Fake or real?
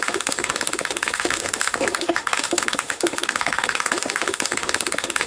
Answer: fake